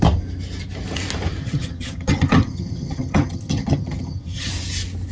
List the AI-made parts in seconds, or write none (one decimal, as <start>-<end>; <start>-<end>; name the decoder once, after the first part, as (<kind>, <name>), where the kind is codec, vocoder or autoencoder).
1.4-4.5 (vocoder, HiFi-GAN)